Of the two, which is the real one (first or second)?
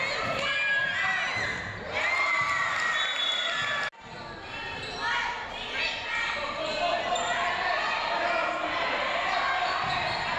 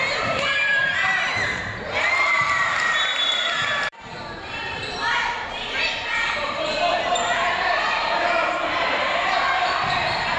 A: first